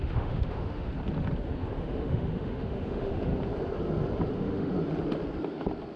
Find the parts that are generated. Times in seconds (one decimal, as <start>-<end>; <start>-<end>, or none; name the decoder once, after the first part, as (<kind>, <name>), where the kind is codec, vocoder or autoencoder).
0.0-0.9 (autoencoder, DAC-VAE); 1.7-3.3; 4.3-4.7